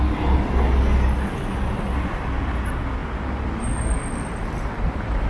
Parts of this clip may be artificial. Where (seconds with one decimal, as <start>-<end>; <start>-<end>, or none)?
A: none